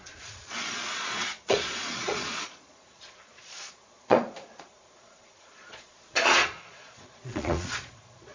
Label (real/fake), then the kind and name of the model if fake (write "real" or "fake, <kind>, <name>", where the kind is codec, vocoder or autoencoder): fake, vocoder, Vocos